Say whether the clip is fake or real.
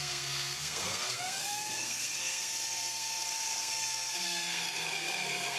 fake